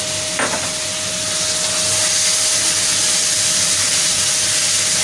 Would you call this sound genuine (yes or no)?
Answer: yes